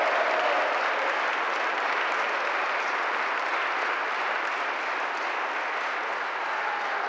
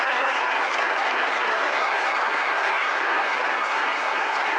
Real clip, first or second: first